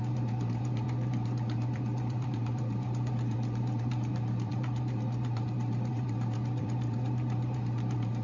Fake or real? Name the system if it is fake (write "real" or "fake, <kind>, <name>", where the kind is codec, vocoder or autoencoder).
fake, vocoder, BigVGAN v2